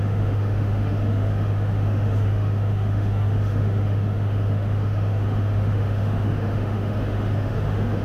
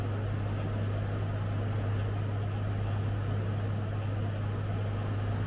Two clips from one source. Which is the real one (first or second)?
second